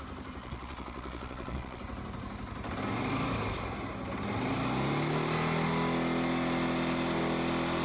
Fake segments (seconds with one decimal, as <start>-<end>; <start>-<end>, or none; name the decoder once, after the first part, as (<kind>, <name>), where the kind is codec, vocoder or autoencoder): 0.4-1.8 (vocoder, Vocos)